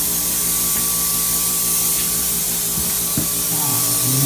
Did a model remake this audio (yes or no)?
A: yes